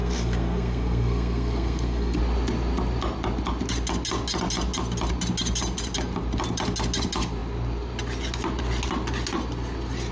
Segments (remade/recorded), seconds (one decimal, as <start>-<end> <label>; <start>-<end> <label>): 0.0-2.2 remade; 2.2-10.1 recorded